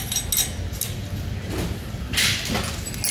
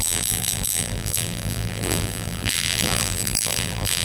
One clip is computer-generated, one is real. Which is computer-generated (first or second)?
second